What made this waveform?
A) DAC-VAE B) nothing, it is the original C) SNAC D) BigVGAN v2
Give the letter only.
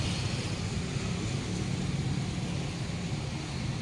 B